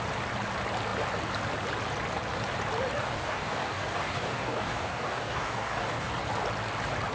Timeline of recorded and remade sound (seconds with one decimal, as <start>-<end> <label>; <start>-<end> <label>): 0.0-3.0 recorded; 3.0-6.1 remade; 6.1-7.1 recorded